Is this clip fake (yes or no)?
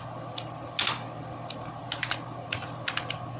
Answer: no